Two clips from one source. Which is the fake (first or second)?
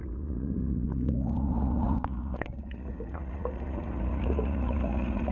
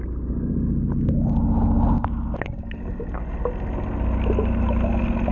first